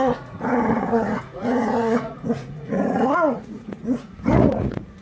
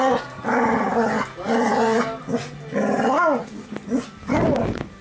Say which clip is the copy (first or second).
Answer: first